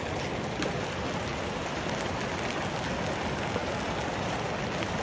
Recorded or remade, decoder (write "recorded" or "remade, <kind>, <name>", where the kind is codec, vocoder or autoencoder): recorded